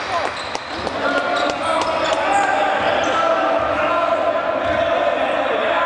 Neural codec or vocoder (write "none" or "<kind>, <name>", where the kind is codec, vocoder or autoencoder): none